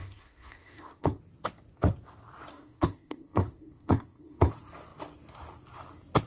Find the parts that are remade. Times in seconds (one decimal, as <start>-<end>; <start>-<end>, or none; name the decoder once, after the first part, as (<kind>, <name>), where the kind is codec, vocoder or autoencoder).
0.0-1.2 (codec, SNAC); 2.5-4.5